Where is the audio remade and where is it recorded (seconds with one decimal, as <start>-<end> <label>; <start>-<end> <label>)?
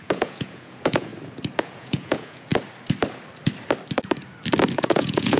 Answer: 0.0-1.1 remade; 1.1-1.6 recorded; 1.6-2.5 remade; 2.5-4.8 recorded; 4.8-5.4 remade